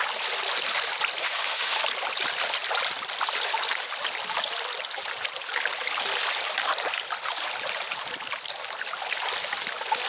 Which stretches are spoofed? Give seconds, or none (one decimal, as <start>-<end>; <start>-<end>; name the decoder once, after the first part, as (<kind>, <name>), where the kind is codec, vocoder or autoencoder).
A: 1.2-1.8 (autoencoder, DAC-VAE)